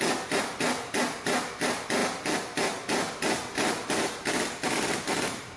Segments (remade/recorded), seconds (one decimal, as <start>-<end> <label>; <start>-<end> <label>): 0.0-5.6 recorded